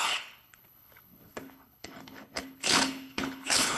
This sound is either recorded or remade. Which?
remade